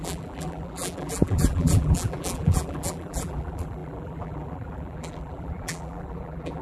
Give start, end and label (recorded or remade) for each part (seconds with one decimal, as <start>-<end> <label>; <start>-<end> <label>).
0.0-6.6 remade

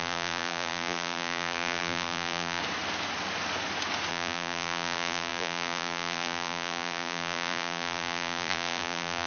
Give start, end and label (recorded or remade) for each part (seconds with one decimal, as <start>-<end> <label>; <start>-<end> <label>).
0.0-2.6 remade; 2.6-4.1 recorded; 4.1-9.3 remade

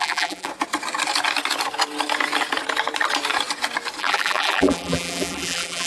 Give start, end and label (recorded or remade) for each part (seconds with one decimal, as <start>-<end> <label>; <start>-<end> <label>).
0.0-0.5 remade; 0.5-4.0 recorded; 4.0-5.9 remade

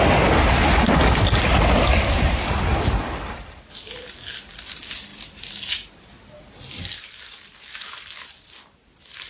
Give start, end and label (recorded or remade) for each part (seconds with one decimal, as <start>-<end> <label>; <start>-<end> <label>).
0.0-1.9 recorded; 1.9-2.6 remade; 2.6-9.3 recorded

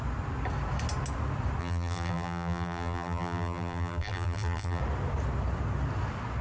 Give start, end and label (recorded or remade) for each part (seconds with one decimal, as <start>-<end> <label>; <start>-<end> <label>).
0.0-1.6 recorded; 1.6-4.8 remade; 4.8-6.4 recorded

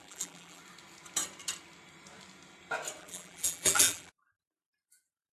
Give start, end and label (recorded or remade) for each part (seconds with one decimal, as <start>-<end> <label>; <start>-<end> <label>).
0.0-0.6 remade; 0.6-3.0 recorded; 3.0-5.4 remade